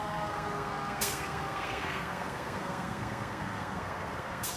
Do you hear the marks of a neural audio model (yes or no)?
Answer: yes